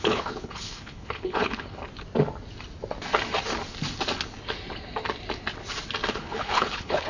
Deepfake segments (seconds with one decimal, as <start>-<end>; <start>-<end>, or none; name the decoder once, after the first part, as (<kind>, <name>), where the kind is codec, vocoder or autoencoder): 0.0-1.8 (codec, HILCodec); 6.1-7.1